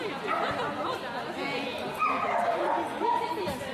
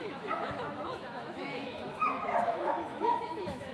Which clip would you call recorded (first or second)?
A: first